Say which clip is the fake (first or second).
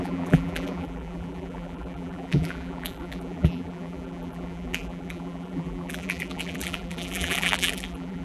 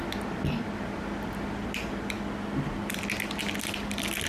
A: first